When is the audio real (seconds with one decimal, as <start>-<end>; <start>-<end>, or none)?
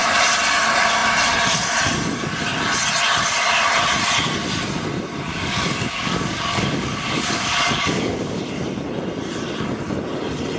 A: 0.0-5.3; 8.4-10.6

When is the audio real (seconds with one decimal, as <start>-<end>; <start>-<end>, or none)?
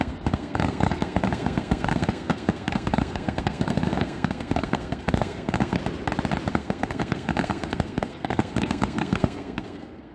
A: 5.8-6.5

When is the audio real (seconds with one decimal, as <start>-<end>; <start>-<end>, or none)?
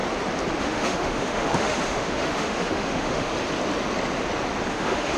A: 0.0-0.6; 3.3-4.7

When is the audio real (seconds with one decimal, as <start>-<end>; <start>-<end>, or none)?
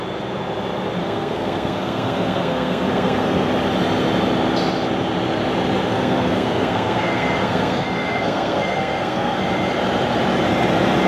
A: 0.0-1.0; 3.5-5.9; 9.4-11.1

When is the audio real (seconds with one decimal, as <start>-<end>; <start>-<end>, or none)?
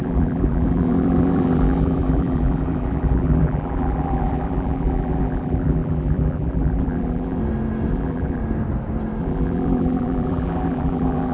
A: 7.4-7.9; 8.4-9.2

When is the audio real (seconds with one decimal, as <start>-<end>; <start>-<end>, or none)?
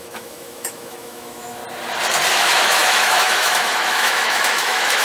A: 1.6-2.3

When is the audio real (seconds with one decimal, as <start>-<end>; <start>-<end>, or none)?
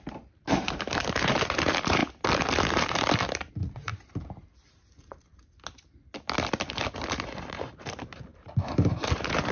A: 2.0-3.5; 3.9-7.5